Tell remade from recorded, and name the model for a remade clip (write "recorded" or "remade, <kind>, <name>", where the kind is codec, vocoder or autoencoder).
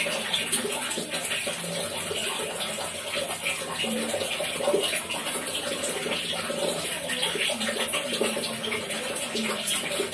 recorded